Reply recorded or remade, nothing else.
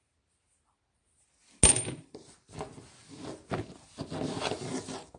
recorded